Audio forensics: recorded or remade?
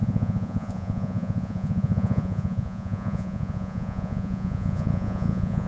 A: remade